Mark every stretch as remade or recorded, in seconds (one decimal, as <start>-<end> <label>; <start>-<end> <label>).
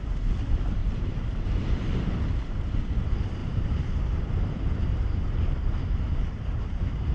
0.0-0.8 recorded; 0.8-2.3 remade; 2.3-3.4 recorded; 3.4-4.0 remade; 4.0-4.9 recorded; 4.9-7.1 remade